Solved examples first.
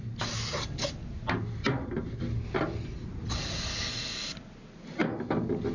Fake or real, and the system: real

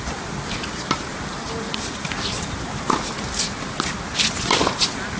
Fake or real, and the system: real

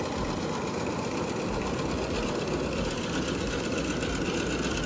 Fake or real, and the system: real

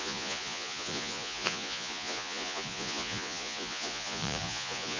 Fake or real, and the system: fake, vocoder, Vocos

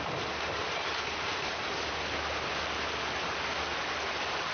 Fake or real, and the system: real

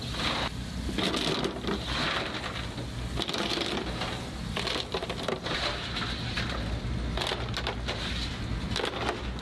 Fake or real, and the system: real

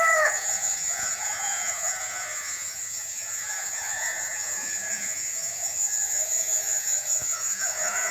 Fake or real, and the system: fake, vocoder, Vocos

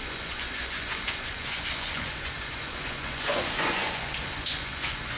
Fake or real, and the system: fake, vocoder, Vocos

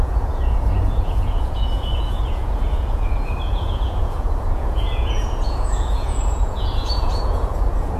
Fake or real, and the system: fake, vocoder, Vocos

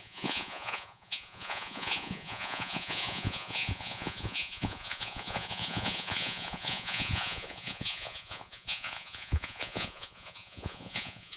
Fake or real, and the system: fake, vocoder, Vocos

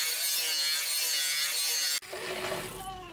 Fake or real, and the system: real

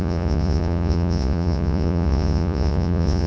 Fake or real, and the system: fake, vocoder, Vocos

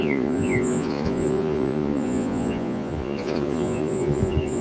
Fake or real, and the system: fake, vocoder, Vocos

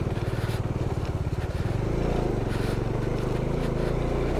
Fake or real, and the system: real